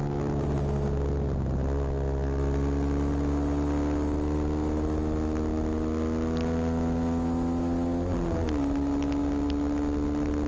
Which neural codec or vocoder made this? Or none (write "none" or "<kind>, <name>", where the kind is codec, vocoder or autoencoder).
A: none